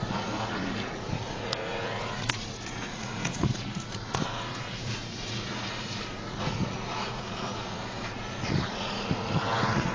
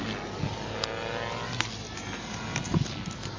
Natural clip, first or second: second